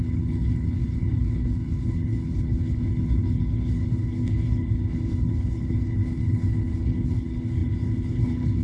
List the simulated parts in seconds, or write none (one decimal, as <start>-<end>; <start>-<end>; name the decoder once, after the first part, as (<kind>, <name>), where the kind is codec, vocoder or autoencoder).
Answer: 0.0-8.6 (codec, HILCodec)